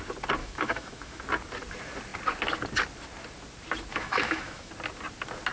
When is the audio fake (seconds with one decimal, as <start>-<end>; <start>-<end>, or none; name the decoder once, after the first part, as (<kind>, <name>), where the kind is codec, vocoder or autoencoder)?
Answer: 0.4-1.2 (autoencoder, DAC-VAE); 3.9-4.7